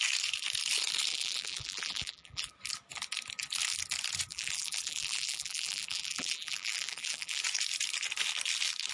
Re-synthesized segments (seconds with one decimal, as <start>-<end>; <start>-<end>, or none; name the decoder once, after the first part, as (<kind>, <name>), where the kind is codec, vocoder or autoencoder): 1.1-2.5 (vocoder, BigVGAN v2); 4.3-7.4